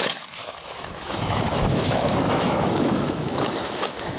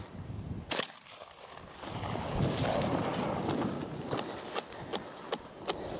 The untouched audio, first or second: second